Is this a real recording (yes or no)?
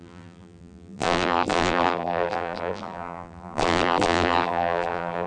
no